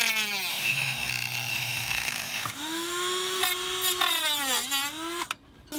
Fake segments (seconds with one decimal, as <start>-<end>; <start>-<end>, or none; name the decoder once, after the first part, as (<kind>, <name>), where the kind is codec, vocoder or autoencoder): 0.5-1.1 (autoencoder, DAC-VAE); 1.5-3.4